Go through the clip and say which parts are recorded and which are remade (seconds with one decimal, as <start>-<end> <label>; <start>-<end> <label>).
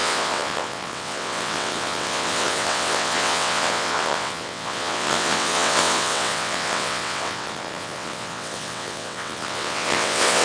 0.0-10.4 remade